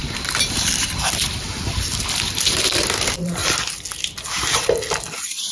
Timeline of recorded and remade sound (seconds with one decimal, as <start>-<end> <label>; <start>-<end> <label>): 0.0-1.9 remade; 1.9-2.7 recorded; 2.7-3.4 remade; 3.4-5.1 recorded; 5.1-5.5 remade